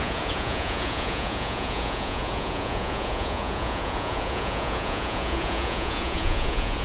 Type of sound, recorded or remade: remade